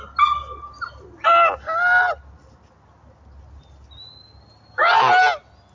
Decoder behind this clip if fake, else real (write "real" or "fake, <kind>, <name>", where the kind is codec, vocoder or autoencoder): real